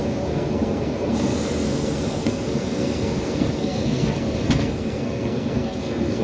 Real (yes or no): no